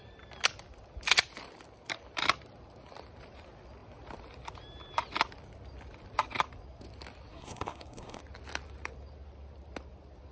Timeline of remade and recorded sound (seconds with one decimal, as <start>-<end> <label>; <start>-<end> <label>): 0.0-7.3 recorded; 7.3-8.2 remade; 8.2-10.3 recorded